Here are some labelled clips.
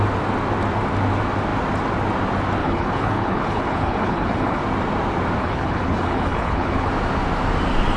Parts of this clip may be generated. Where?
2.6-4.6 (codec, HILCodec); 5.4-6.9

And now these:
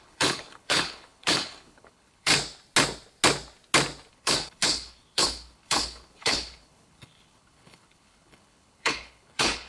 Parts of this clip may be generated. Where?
0.0-2.3 (codec, HILCodec); 4.1-9.7